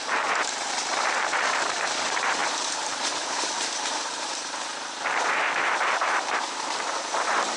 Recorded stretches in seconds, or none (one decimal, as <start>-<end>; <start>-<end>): none